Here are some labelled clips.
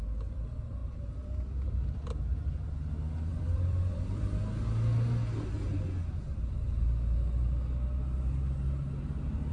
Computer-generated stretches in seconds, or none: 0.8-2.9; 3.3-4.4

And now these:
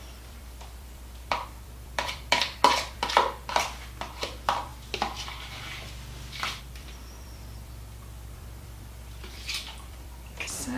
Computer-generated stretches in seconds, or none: 0.0-4.7; 6.6-10.8

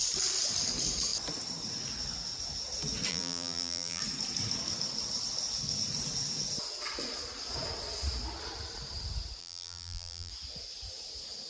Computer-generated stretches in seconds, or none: 3.1-4.0; 9.4-10.3

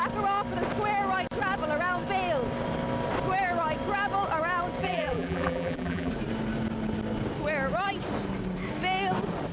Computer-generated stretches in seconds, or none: 4.8-6.1